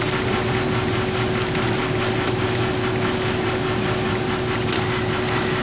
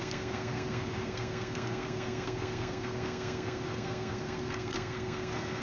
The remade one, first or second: second